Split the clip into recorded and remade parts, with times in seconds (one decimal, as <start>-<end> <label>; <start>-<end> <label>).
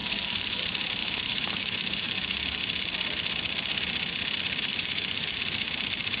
0.0-0.6 remade; 0.6-1.0 recorded; 1.0-2.6 remade; 2.6-4.7 recorded; 4.7-5.4 remade; 5.4-6.2 recorded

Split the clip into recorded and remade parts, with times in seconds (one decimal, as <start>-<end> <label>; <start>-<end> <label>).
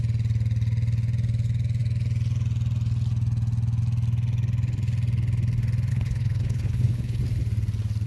0.0-5.9 recorded; 5.9-7.2 remade; 7.2-8.1 recorded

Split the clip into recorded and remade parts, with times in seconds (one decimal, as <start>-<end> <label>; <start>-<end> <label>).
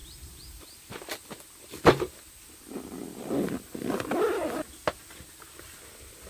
0.0-0.9 remade; 0.9-6.3 recorded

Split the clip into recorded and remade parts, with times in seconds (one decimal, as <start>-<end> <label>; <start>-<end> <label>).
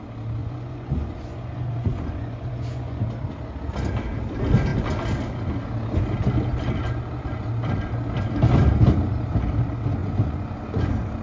0.0-0.4 recorded; 0.4-3.0 remade; 3.0-10.0 recorded; 10.0-10.7 remade; 10.7-11.2 recorded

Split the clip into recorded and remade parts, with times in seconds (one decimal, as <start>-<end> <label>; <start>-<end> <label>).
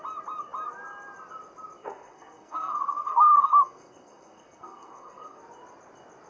0.0-1.8 recorded; 1.8-5.4 remade; 5.4-6.3 recorded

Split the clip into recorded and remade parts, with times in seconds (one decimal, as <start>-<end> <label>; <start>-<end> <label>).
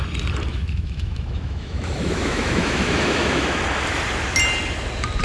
0.0-0.5 recorded; 0.5-3.6 remade; 3.6-5.2 recorded